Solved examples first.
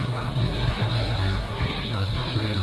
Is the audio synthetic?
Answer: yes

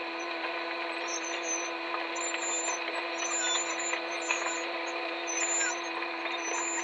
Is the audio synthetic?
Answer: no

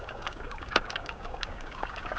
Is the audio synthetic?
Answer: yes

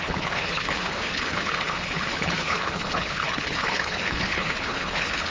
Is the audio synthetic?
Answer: yes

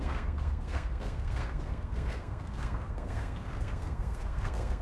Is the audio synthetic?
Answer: yes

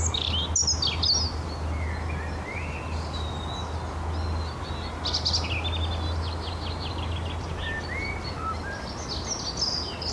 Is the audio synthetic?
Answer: no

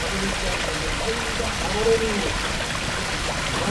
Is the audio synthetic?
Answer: no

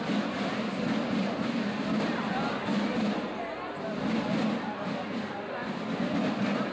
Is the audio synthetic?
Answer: no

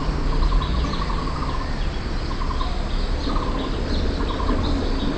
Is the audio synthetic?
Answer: no